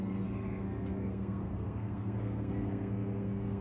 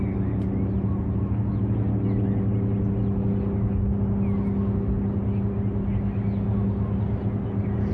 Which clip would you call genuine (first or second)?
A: second